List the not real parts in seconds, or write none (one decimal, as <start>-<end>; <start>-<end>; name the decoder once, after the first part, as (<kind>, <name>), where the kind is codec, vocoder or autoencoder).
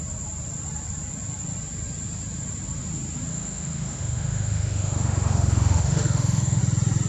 3.3-6.6 (autoencoder, DAC-VAE)